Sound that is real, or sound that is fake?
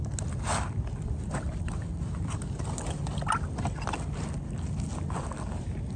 real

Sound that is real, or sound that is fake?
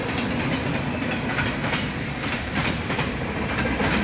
real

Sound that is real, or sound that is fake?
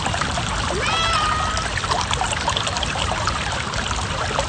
fake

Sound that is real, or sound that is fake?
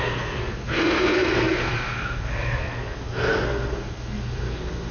fake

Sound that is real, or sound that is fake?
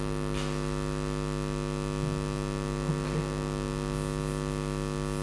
real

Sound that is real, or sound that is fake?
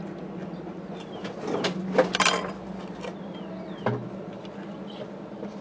real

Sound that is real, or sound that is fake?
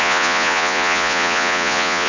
fake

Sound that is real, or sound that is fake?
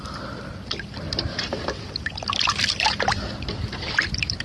fake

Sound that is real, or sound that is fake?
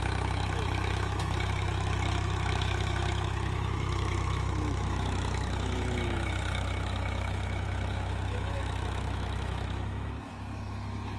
fake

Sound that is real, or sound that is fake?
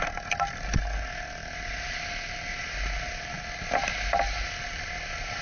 real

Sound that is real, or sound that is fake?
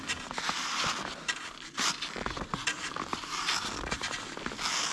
real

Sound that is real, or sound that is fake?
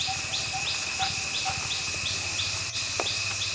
real